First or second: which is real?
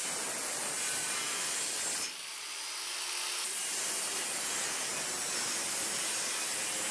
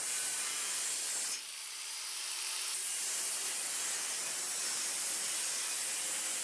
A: first